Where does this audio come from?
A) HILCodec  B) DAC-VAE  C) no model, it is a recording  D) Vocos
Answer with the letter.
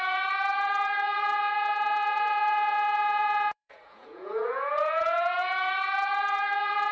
D